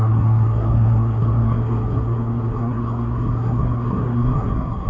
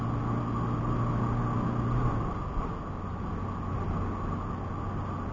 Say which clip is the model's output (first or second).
first